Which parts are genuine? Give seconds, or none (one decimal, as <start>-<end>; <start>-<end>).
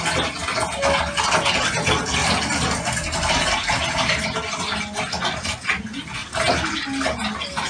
0.0-7.7